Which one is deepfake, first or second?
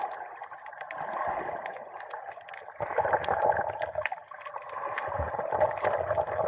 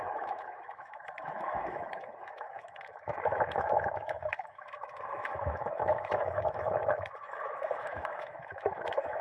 second